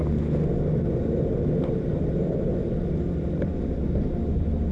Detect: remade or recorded recorded